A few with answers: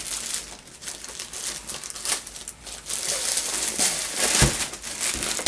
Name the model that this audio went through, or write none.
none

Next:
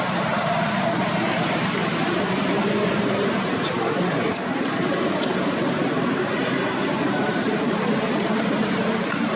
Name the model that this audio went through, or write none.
vocoder, BigVGAN v2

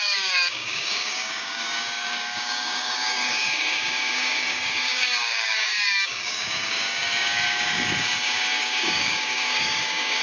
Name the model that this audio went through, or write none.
codec, DAC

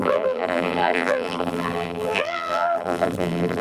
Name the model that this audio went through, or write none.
vocoder, BigVGAN v2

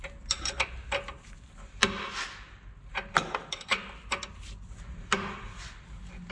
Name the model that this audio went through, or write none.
none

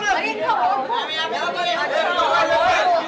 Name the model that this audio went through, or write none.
none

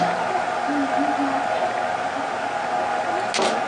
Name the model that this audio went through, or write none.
none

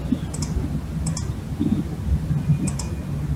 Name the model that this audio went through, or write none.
none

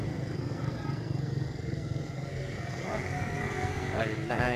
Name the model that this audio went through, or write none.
codec, SNAC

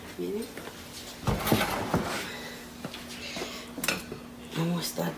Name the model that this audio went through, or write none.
none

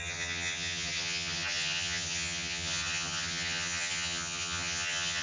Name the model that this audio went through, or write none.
vocoder, HiFi-GAN